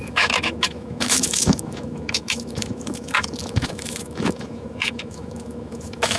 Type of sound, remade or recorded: remade